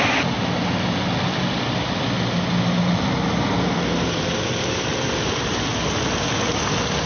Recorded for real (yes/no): yes